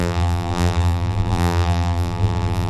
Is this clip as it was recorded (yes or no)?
no